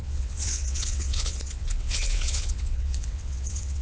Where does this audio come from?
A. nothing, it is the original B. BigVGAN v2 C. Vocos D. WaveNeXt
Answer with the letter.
D